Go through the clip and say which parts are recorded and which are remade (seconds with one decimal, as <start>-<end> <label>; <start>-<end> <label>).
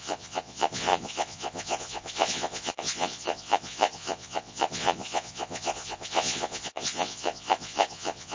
0.0-8.3 remade